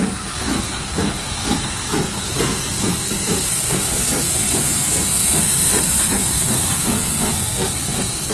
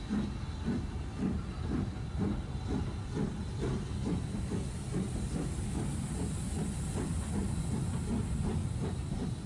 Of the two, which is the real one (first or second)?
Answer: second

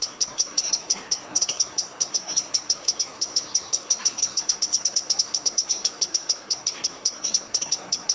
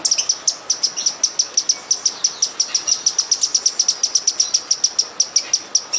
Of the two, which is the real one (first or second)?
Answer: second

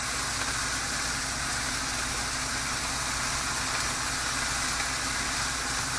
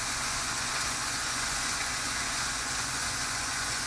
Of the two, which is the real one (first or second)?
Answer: first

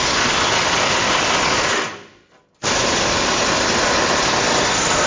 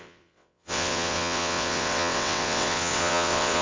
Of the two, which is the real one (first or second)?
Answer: first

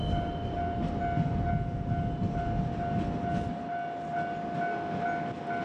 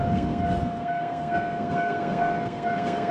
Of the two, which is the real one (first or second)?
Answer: first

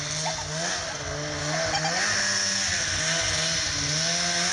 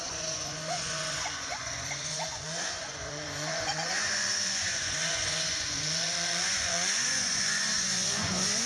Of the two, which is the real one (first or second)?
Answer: first